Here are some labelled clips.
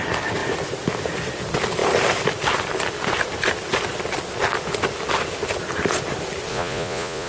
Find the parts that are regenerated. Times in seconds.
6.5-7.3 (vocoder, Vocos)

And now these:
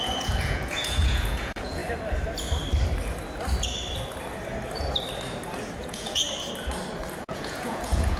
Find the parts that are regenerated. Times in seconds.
0.0-1.8 (vocoder, Vocos); 5.8-6.2; 7.2-8.2

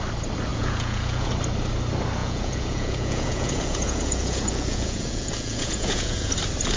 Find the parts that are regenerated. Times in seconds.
0.5-1.3 (vocoder, Vocos); 2.2-6.3

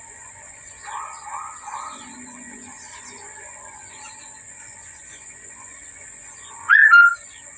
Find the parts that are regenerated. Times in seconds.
0.0-6.8 (vocoder, Vocos)

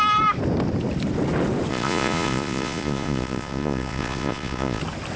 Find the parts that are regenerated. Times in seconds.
1.7-4.8 (vocoder, Vocos)

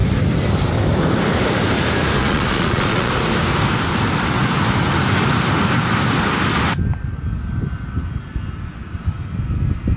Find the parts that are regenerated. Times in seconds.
2.2-3.1 (vocoder, Vocos)

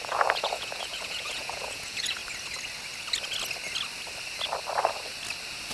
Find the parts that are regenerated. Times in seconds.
0.0-2.2 (vocoder, Vocos)